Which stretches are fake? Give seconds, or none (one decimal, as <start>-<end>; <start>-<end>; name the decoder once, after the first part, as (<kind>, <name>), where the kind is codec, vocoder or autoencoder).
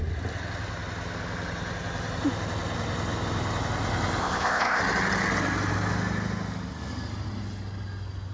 4.2-4.8 (codec, ZipCodec)